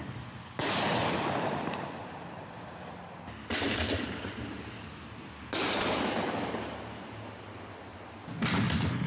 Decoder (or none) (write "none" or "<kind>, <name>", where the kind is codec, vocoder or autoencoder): none